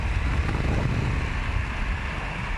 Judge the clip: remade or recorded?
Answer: recorded